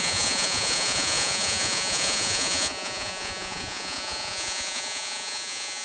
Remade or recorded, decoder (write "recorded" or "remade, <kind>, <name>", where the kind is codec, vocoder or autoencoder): remade, vocoder, Vocos